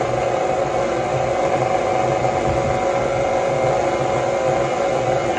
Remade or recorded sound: recorded